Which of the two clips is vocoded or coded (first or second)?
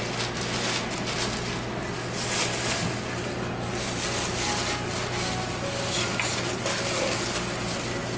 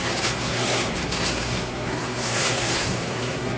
second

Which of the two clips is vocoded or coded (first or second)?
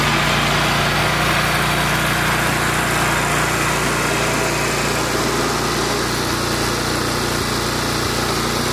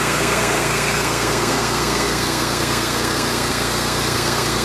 second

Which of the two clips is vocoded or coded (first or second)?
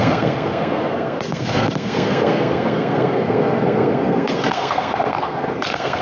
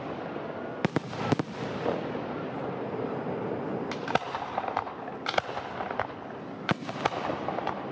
first